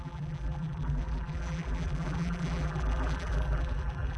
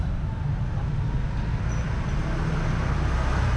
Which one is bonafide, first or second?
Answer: second